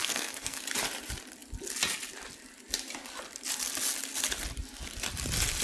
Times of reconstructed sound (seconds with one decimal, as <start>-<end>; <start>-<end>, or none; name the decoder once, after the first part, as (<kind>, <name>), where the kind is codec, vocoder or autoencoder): 0.0-0.6 (codec, SNAC)